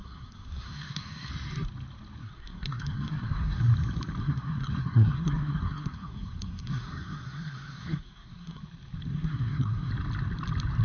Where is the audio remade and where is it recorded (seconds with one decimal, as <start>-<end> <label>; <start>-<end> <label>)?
0.0-1.3 remade; 1.3-2.2 recorded; 2.2-3.6 remade; 3.6-4.2 recorded; 4.2-8.6 remade; 8.6-9.1 recorded; 9.1-9.9 remade; 9.9-10.8 recorded